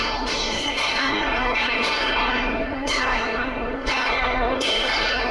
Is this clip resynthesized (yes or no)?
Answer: yes